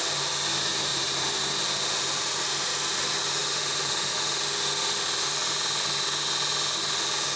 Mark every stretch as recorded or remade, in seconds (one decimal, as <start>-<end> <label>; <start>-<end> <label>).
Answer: 0.0-0.9 recorded; 0.9-1.5 remade; 1.5-3.4 recorded; 3.4-4.1 remade; 4.1-7.4 recorded